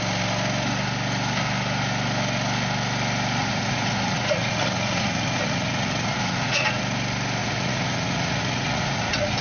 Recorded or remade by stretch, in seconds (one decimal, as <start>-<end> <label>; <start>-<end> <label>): 0.0-3.4 recorded; 3.4-6.8 remade; 6.8-7.4 recorded; 7.4-9.4 remade